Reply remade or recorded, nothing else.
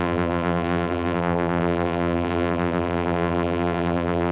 remade